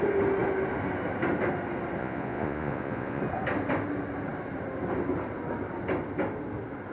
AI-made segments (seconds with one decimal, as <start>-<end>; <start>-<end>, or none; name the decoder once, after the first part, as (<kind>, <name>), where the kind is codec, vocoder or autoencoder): 2.0-3.2 (vocoder, Vocos)

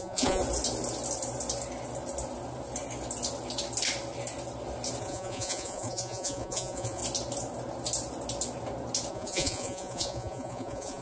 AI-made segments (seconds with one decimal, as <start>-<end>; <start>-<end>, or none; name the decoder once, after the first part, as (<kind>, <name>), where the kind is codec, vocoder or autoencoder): 0.0-0.4 (vocoder, Vocos); 5.0-7.0; 9.1-11.0

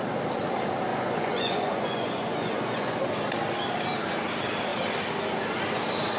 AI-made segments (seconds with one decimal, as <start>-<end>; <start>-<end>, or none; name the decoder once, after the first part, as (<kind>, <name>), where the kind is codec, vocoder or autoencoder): 0.9-3.0 (vocoder, Vocos)

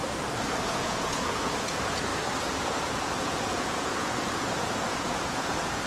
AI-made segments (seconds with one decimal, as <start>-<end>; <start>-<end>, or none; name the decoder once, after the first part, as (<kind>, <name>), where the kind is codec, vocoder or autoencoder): 0.6-2.1 (vocoder, Vocos); 2.6-5.9